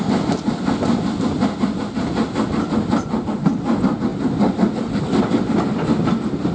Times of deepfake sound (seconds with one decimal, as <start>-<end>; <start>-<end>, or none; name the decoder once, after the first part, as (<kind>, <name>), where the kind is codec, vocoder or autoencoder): none